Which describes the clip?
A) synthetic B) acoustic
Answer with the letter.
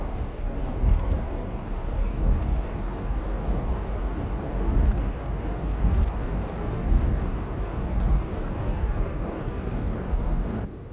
A